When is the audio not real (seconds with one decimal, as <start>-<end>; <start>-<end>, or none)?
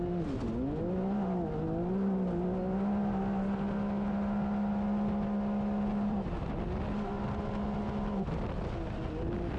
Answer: 5.9-6.5